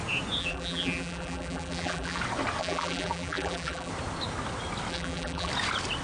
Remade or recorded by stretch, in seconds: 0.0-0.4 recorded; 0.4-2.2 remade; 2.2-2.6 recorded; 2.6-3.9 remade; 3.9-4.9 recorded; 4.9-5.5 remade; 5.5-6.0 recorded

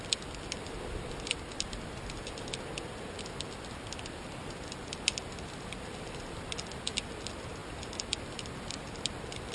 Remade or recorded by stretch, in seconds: 0.0-7.6 recorded; 7.6-8.3 remade; 8.3-9.5 recorded

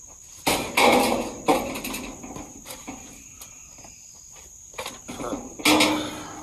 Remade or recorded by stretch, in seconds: 0.0-1.5 recorded; 1.5-4.6 remade; 4.6-6.4 recorded

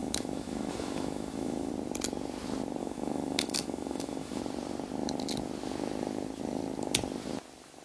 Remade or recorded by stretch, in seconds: 0.0-1.7 remade; 1.7-2.8 recorded; 2.8-4.4 remade; 4.4-7.8 recorded

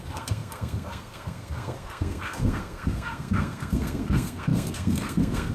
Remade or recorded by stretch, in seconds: 0.0-5.5 remade

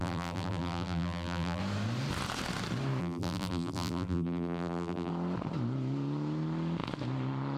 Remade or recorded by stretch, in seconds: 0.0-1.6 remade; 1.6-3.0 recorded; 3.0-5.1 remade; 5.1-7.6 recorded

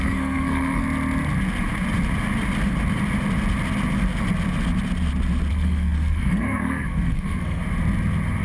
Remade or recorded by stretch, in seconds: 0.0-0.8 remade; 0.8-5.5 recorded; 5.5-7.6 remade; 7.6-8.4 recorded

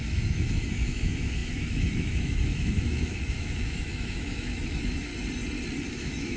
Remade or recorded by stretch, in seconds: 0.0-5.1 remade; 5.1-5.9 recorded; 5.9-6.4 remade